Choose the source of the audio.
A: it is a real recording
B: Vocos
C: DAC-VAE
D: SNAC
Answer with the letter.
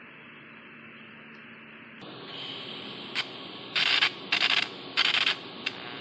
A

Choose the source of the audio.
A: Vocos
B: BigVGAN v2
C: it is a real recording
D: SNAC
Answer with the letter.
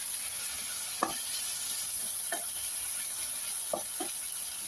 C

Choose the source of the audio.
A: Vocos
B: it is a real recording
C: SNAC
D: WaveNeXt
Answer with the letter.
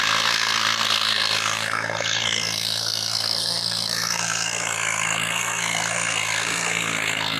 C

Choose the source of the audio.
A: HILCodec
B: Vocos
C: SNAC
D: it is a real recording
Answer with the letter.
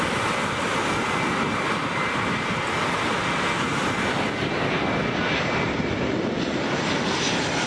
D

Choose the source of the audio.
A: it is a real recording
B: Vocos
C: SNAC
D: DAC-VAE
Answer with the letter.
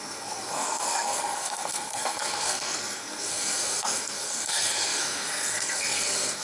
C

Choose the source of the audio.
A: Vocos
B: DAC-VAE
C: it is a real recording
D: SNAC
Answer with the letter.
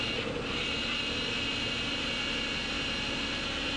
C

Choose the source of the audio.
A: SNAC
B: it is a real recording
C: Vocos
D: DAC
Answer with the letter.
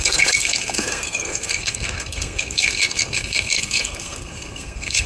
A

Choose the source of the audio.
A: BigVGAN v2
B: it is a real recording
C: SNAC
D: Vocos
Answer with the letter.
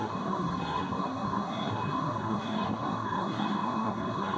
C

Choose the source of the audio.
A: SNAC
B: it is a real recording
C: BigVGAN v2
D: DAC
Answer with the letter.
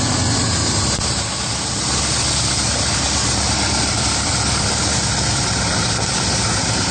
B